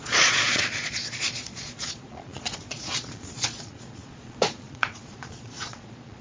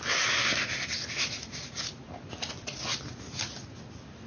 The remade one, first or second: first